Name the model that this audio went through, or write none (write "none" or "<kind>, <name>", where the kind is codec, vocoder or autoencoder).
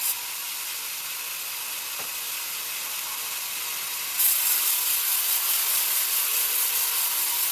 none